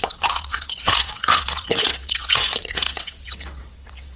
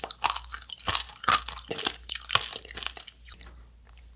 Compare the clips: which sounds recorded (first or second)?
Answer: second